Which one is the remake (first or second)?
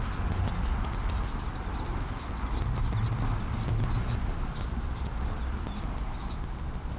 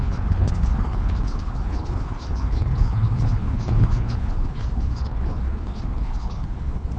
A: second